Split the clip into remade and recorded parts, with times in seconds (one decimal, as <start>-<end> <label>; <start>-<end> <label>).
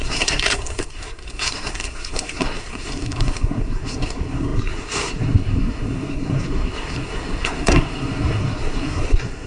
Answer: 0.0-9.5 remade